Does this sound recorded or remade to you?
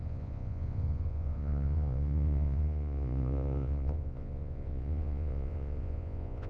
remade